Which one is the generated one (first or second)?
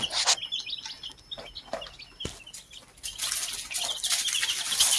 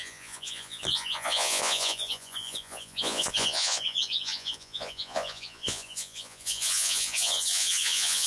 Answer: second